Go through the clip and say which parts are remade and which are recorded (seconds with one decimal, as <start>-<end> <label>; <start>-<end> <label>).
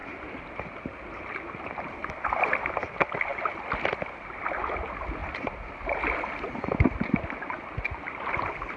0.0-8.8 recorded